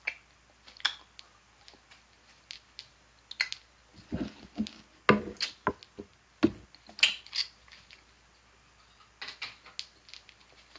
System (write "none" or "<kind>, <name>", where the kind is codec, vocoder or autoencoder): none